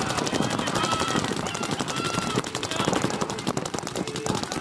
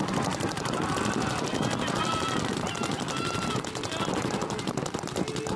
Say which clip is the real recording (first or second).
second